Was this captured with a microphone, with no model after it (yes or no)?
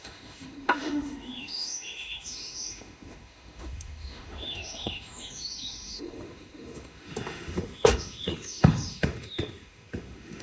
no